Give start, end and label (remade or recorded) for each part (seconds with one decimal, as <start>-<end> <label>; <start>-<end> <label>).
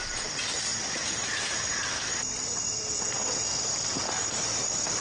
0.0-5.0 recorded